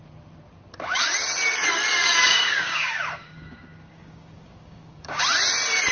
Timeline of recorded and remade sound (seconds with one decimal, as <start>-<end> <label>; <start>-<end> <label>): 0.0-1.9 recorded; 1.9-5.2 remade; 5.2-5.9 recorded